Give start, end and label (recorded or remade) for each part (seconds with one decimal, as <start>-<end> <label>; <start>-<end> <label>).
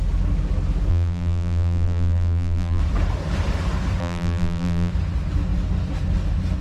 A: 0.0-0.9 recorded; 0.9-2.8 remade; 2.8-4.0 recorded; 4.0-4.9 remade; 4.9-6.6 recorded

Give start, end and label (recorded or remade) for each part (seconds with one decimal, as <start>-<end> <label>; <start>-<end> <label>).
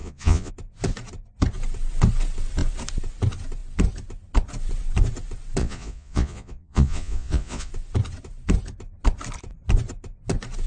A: 0.0-0.5 remade; 0.5-5.6 recorded; 5.6-7.7 remade; 7.7-10.7 recorded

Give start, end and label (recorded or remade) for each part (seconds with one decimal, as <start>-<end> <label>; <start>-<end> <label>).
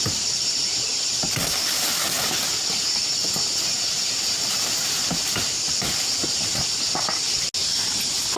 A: 0.0-8.4 recorded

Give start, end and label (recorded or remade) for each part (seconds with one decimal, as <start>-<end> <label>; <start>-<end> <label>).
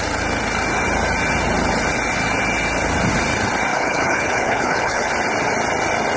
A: 0.0-3.7 recorded; 3.7-5.1 remade; 5.1-6.2 recorded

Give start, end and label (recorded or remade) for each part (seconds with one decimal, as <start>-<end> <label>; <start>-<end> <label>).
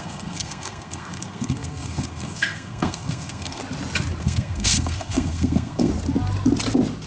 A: 0.0-3.6 remade; 3.6-4.2 recorded; 4.2-5.9 remade; 5.9-7.1 recorded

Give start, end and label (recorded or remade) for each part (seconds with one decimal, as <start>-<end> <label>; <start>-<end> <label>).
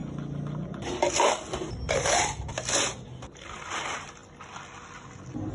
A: 0.0-5.5 recorded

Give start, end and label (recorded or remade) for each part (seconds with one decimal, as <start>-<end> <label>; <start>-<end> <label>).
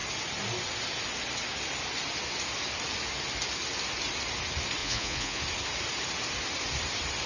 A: 0.0-4.8 recorded; 4.8-5.4 remade; 5.4-7.3 recorded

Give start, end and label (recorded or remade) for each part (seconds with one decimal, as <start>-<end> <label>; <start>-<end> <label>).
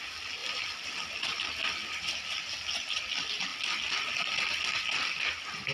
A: 0.0-5.7 recorded